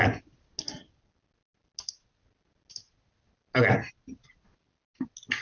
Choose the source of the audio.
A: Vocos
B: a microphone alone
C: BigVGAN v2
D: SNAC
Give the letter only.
B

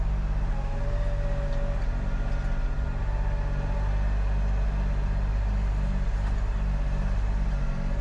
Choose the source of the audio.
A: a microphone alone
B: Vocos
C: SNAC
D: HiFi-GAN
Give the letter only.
A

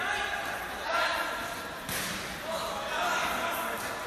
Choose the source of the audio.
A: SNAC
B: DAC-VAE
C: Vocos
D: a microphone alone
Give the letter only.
D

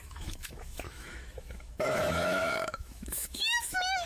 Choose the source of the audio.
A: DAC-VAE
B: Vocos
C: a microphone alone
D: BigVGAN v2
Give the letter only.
A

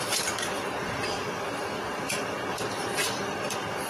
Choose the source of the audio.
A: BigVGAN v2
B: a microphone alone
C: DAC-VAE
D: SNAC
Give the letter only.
A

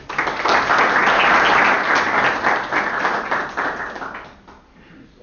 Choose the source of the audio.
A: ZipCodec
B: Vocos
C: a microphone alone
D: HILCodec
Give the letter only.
C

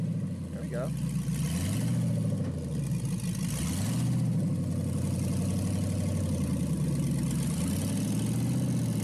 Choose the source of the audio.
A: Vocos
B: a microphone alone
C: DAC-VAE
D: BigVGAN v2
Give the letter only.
B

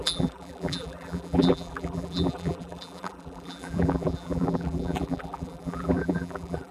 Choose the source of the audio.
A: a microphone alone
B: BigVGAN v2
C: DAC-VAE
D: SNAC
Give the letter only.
B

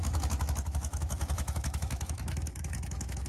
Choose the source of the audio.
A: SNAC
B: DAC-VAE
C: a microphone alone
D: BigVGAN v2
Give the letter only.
B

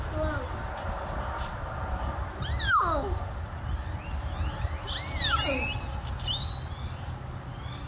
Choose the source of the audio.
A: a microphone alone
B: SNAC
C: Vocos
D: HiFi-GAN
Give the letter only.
A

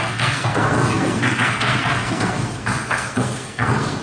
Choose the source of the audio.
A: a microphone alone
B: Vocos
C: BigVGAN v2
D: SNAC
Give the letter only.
D